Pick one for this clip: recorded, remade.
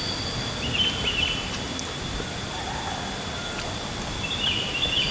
recorded